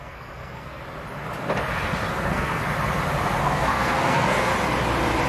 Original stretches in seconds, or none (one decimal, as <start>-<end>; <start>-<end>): 0.8-2.1; 2.6-3.4; 4.5-5.3